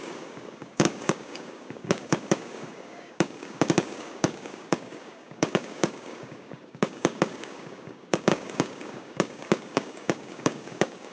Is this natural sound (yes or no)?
no